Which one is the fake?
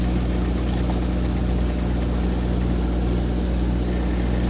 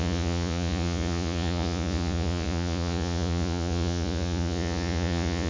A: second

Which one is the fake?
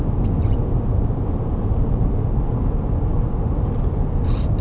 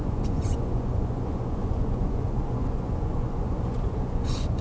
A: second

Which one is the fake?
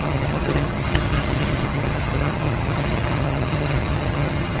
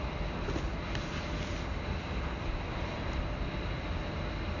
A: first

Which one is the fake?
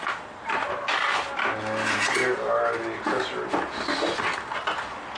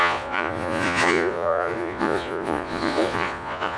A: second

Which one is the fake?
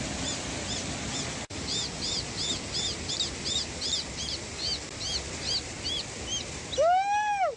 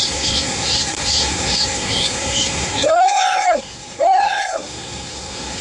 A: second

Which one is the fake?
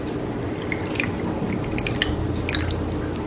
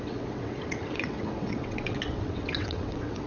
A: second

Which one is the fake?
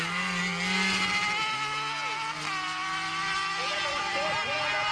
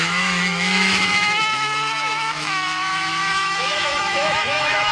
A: second